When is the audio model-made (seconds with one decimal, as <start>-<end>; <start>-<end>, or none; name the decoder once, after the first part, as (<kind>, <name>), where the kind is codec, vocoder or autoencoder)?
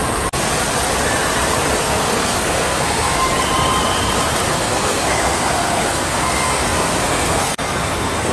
1.8-3.3 (codec, SNAC); 4.5-8.3